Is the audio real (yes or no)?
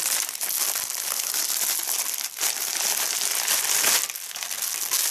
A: yes